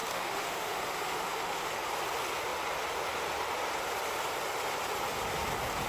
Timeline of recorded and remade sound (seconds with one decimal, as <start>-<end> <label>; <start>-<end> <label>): 0.0-1.7 remade; 1.7-5.9 recorded